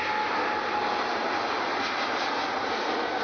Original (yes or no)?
yes